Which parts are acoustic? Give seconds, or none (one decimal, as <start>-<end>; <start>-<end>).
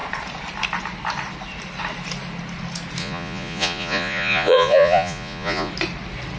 0.0-3.0; 5.7-6.4